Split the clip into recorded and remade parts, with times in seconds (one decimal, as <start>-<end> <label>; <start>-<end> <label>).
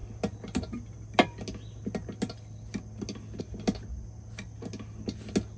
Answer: 0.0-5.6 recorded